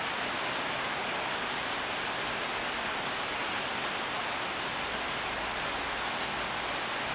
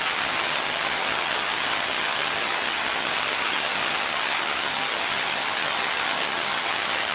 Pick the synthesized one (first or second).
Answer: second